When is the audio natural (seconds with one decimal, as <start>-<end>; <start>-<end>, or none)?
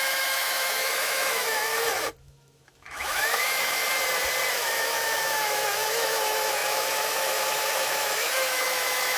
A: 1.7-2.2; 3.8-4.5